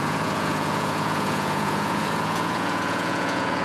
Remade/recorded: remade